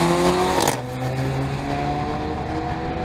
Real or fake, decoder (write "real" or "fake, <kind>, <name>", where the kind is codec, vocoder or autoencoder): real